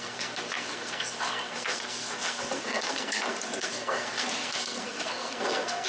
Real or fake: fake